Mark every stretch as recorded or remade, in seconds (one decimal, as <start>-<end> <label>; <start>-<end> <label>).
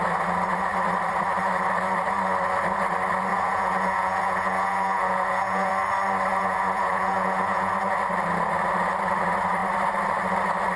0.0-3.3 recorded; 3.3-5.7 remade; 5.7-6.3 recorded; 6.3-7.7 remade; 7.7-10.8 recorded